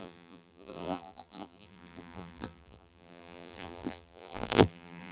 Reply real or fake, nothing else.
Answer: fake